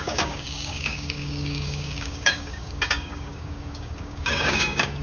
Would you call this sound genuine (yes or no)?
no